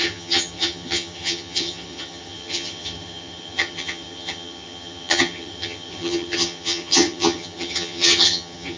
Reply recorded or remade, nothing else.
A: remade